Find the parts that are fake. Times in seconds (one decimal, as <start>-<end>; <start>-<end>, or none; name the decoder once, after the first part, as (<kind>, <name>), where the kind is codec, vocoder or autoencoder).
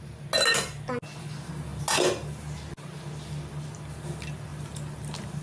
none